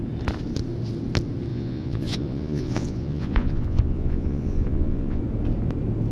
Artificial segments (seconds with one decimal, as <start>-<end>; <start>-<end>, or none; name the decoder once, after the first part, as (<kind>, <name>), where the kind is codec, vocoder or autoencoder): 1.5-5.2 (vocoder, Vocos)